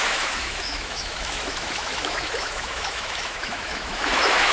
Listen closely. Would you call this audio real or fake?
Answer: fake